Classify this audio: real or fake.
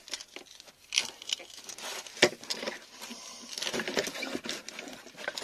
real